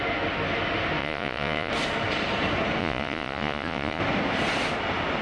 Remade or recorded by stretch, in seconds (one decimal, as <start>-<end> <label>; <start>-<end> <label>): 0.0-1.0 recorded; 1.0-1.7 remade; 1.7-2.8 recorded; 2.8-4.0 remade; 4.0-5.2 recorded